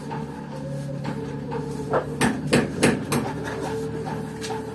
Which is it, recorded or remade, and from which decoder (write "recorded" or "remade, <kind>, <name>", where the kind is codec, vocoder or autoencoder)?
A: recorded